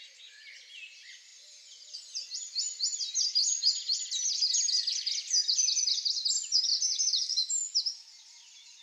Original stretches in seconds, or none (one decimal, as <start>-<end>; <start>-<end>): 0.0-6.7; 7.2-8.8